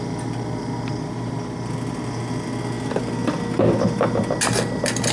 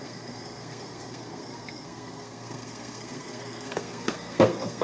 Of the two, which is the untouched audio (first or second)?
first